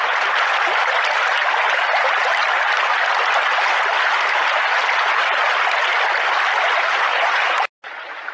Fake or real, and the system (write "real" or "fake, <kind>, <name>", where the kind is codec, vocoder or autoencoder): real